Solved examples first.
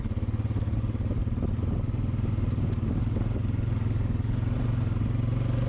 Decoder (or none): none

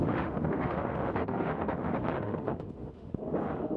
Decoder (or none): autoencoder, DAC-VAE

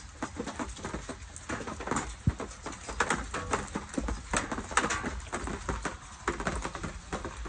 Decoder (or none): none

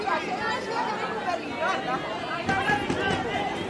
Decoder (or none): none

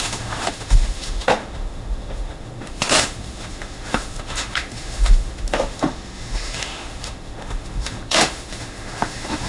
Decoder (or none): autoencoder, DAC-VAE